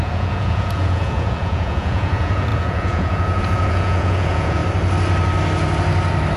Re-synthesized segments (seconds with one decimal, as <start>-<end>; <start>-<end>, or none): 0.0-4.6